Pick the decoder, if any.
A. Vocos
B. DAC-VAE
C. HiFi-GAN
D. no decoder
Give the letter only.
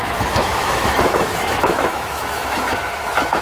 B